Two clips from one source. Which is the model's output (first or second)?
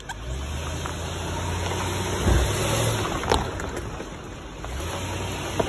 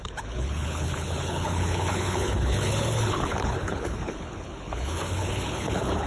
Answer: second